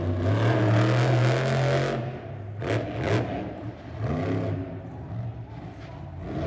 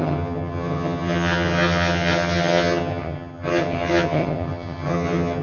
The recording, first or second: first